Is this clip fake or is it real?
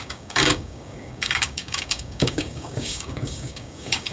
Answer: fake